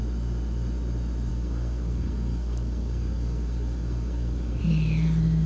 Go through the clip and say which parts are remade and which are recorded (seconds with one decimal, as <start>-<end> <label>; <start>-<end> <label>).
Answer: 0.0-1.3 recorded; 1.3-4.6 remade; 4.6-5.5 recorded

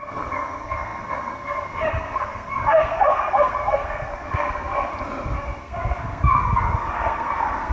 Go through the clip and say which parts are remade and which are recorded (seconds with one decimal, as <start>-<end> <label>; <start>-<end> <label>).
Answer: 0.0-4.9 remade; 4.9-5.6 recorded; 5.6-7.7 remade

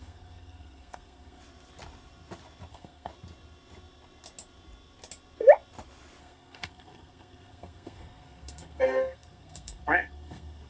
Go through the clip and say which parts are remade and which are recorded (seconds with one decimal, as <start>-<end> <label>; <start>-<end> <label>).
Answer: 0.0-1.4 remade; 1.4-2.7 recorded; 2.7-3.1 remade; 3.1-6.2 recorded; 6.2-10.7 remade

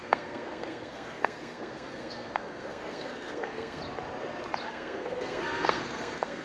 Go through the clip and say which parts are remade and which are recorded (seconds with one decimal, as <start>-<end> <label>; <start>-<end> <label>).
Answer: 0.0-3.8 remade; 3.8-4.7 recorded; 4.7-6.4 remade

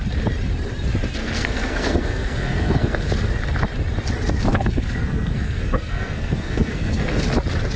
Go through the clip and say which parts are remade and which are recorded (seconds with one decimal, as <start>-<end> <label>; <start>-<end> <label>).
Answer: 0.0-1.2 recorded; 1.2-3.1 remade; 3.1-4.5 recorded; 4.5-7.2 remade; 7.2-7.8 recorded

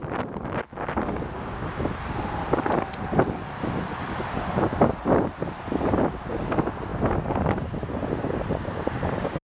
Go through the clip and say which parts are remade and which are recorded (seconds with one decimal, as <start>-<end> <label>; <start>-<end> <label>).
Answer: 0.0-9.5 recorded